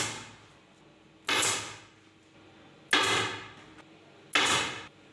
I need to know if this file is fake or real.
real